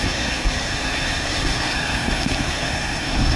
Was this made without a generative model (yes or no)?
no